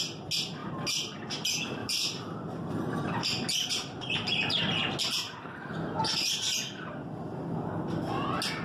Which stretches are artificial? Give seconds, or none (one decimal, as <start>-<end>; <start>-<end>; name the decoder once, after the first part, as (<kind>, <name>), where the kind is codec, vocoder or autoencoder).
1.8-4.6 (vocoder, BigVGAN v2)